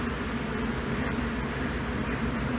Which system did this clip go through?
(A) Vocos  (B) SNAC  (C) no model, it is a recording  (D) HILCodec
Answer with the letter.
C